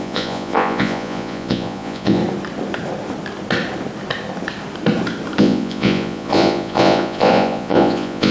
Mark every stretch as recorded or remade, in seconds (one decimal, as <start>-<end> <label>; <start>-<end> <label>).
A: 0.0-2.2 remade; 2.2-5.4 recorded; 5.4-8.3 remade